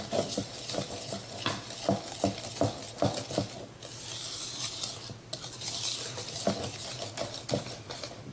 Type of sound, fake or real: real